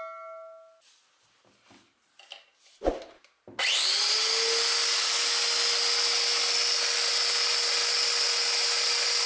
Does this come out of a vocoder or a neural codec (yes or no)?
no